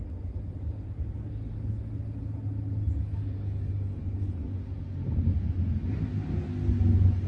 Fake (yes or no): no